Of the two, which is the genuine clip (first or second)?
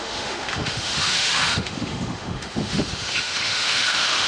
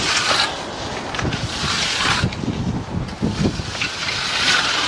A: second